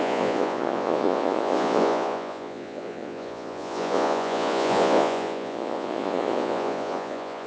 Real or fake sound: fake